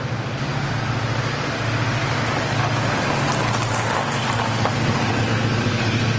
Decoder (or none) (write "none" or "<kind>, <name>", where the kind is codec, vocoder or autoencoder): none